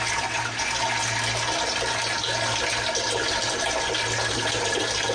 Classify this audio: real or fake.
real